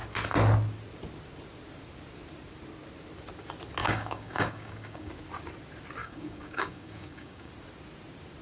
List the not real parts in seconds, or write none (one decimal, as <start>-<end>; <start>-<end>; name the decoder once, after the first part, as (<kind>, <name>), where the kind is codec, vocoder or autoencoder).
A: 3.8-5.1 (codec, DAC); 6.0-7.5